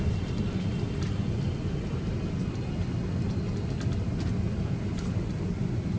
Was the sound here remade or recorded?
recorded